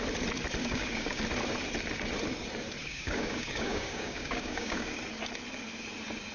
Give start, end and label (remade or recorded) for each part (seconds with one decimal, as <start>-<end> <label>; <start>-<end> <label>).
0.0-0.6 recorded; 0.6-1.2 remade; 1.2-2.8 recorded; 2.8-5.0 remade; 5.0-6.3 recorded